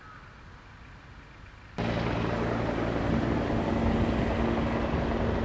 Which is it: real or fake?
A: real